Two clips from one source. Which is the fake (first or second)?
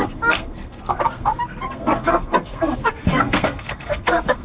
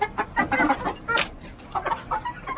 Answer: first